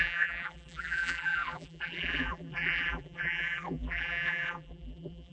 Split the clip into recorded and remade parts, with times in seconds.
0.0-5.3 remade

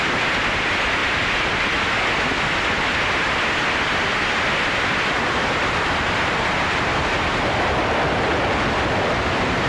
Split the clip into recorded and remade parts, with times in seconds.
0.0-9.7 recorded

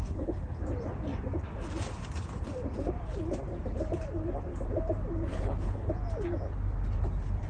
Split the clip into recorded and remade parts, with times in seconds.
0.0-0.6 remade; 0.6-5.3 recorded; 5.3-5.9 remade; 5.9-7.5 recorded

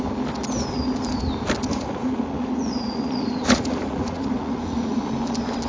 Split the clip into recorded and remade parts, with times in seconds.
0.0-1.7 recorded; 1.7-5.1 remade; 5.1-5.7 recorded

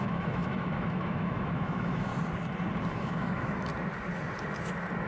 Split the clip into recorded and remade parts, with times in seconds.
0.0-2.1 remade; 2.1-2.9 recorded; 2.9-3.7 remade; 3.7-5.1 recorded

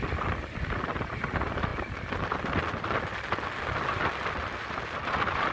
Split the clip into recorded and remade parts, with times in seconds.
0.0-5.5 recorded